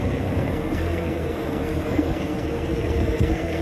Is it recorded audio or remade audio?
remade